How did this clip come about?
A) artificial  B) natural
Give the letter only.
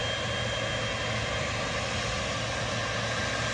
B